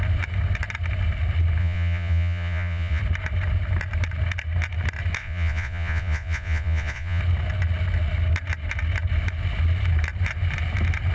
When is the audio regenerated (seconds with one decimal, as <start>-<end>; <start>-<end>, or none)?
1.6-3.0; 5.2-7.2